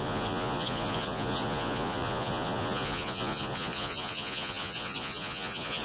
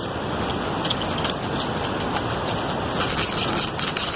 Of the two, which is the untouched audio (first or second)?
second